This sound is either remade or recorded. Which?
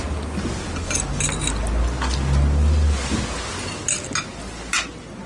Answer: recorded